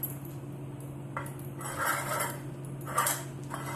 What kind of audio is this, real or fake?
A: real